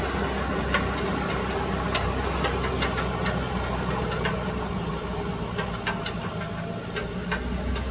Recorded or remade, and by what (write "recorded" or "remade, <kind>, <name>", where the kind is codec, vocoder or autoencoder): recorded